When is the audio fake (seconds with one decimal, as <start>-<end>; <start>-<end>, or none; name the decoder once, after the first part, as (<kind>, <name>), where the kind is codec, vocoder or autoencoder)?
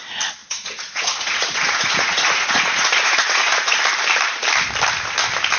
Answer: 0.4-3.8 (vocoder, Vocos)